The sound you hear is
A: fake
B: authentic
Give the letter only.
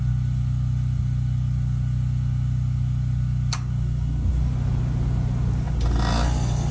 B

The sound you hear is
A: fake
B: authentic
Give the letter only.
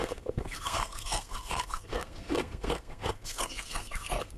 A